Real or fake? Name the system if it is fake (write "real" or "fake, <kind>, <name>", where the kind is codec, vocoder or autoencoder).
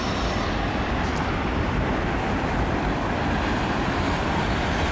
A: fake, vocoder, BigVGAN v2